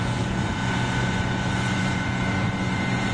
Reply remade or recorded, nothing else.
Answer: remade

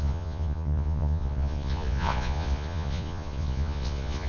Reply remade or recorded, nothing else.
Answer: remade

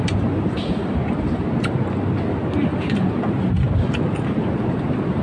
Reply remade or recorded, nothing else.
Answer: recorded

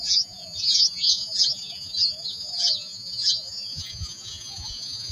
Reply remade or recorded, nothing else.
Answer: remade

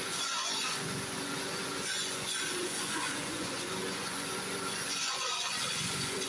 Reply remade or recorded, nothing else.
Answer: remade